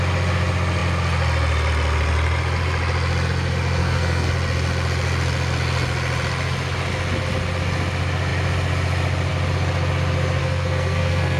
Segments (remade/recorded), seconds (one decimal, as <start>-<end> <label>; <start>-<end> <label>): 0.0-3.8 recorded; 3.8-4.3 remade; 4.3-10.4 recorded; 10.4-11.4 remade